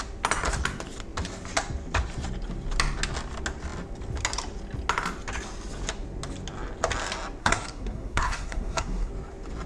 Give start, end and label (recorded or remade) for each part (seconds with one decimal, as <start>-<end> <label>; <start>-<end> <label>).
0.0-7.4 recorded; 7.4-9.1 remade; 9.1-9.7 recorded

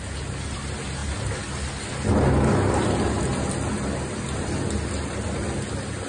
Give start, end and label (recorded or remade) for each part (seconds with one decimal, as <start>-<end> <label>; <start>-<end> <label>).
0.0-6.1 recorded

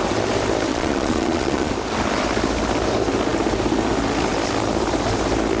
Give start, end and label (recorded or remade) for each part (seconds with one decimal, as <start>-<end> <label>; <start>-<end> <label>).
0.0-0.7 recorded; 0.7-1.7 remade; 1.7-5.6 recorded

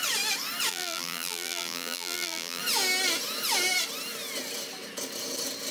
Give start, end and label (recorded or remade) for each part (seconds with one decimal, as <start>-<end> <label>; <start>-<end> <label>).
0.0-0.7 recorded; 0.7-2.6 remade; 2.6-5.7 recorded

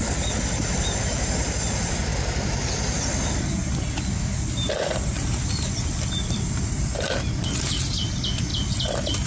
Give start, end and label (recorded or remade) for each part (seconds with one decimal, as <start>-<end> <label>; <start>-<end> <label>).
0.0-2.1 remade; 2.1-4.7 recorded; 4.7-8.5 remade; 8.5-9.3 recorded

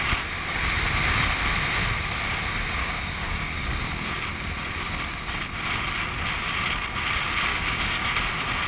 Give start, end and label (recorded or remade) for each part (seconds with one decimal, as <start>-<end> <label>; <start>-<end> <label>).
0.0-2.8 recorded; 2.8-3.8 remade; 3.8-7.5 recorded; 7.5-8.1 remade; 8.1-8.7 recorded

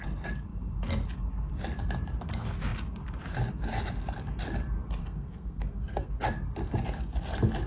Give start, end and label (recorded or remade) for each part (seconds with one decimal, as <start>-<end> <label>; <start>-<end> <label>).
0.0-5.0 recorded; 5.0-6.1 remade; 6.1-7.7 recorded

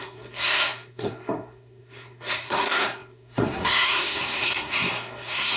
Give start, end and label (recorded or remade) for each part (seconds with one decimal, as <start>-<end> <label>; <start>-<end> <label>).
0.0-5.6 remade